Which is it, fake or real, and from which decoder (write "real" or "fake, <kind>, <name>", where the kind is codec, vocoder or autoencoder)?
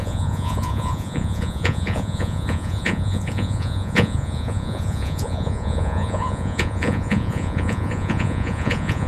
fake, vocoder, Vocos